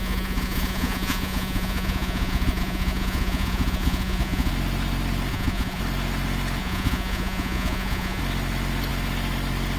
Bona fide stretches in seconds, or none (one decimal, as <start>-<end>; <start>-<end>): 4.5-5.3; 5.8-6.6; 8.2-9.8

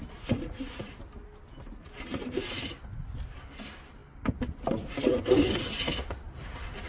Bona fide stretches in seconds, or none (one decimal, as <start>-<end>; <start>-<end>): 0.0-6.9